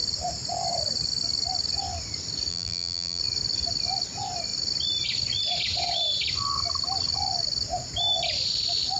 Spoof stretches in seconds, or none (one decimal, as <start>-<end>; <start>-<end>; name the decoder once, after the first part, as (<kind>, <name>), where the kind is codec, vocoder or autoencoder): 2.5-3.2 (vocoder, BigVGAN v2)